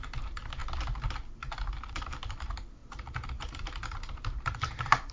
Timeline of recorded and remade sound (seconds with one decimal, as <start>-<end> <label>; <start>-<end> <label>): 0.0-0.6 remade; 0.6-1.9 recorded; 1.9-5.1 remade